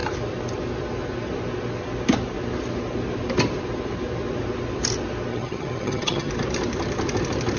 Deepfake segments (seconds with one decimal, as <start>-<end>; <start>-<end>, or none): 5.3-6.3